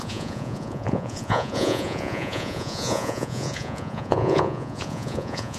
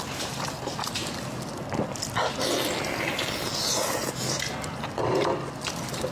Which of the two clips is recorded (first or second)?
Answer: second